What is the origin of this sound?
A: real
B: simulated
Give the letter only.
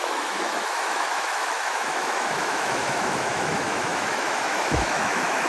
B